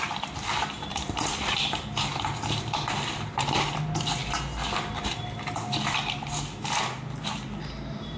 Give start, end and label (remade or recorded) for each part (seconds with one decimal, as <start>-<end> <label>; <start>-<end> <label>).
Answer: 0.0-0.9 recorded; 0.9-1.6 remade; 1.6-8.2 recorded